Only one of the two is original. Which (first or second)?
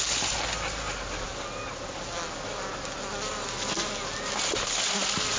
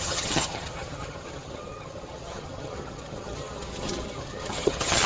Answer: first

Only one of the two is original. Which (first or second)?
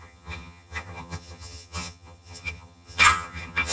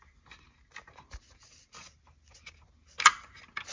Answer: second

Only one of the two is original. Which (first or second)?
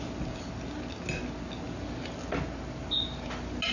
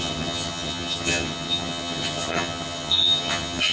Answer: first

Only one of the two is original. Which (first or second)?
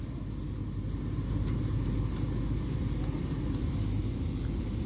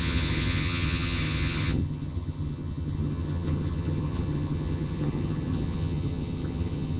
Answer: first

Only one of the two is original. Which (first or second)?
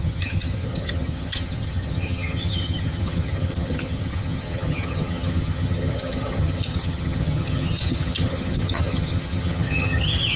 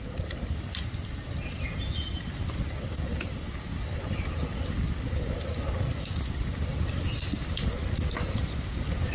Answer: second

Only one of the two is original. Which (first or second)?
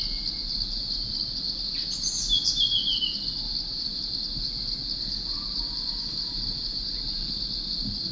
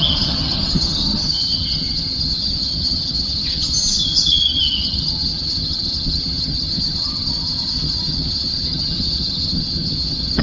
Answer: first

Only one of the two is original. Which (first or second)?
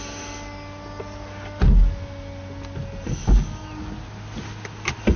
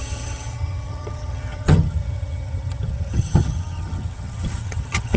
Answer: first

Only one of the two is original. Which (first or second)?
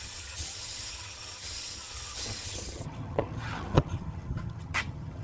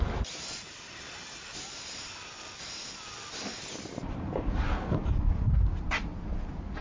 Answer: second